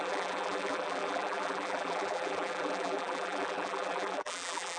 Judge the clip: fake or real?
fake